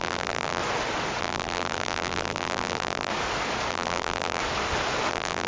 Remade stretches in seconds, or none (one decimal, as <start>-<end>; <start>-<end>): 0.0-0.6; 1.2-3.1; 3.7-4.4; 5.1-5.5